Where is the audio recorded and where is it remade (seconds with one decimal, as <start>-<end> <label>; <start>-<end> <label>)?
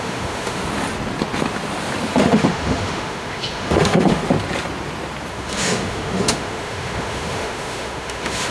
0.0-0.6 remade; 0.6-2.1 recorded; 2.1-4.2 remade; 4.2-5.3 recorded; 5.3-8.5 remade